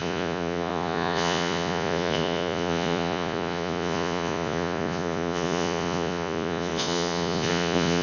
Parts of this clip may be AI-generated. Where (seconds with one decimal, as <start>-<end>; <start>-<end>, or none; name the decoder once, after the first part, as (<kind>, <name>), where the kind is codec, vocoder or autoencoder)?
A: 0.0-8.0 (vocoder, Vocos)